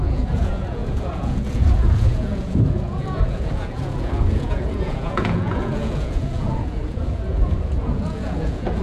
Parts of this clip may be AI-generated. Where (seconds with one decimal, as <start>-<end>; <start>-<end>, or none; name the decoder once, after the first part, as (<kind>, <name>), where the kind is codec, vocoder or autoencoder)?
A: 0.0-8.8 (vocoder, Vocos)